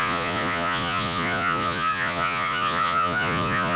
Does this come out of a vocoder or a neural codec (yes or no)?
yes